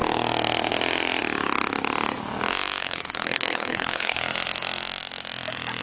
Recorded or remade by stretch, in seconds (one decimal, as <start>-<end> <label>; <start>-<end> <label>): 0.0-2.8 recorded; 2.8-4.2 remade; 4.2-5.8 recorded